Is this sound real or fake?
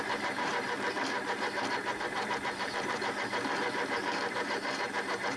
fake